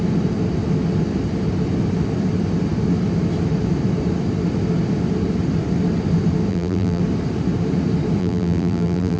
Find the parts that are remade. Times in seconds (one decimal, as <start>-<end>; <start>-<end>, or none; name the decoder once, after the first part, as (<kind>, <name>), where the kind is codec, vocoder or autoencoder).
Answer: 6.5-7.0 (vocoder, BigVGAN v2); 8.2-9.2